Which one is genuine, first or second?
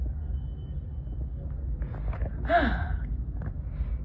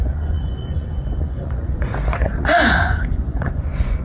first